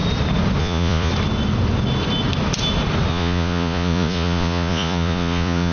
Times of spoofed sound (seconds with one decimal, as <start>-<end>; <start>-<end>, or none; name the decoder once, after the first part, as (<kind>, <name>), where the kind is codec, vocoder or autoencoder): 0.6-1.1 (vocoder, Vocos); 3.1-5.7